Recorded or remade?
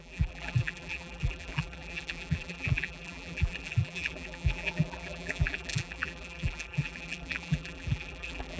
remade